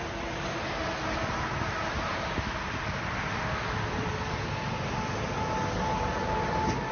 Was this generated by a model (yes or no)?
no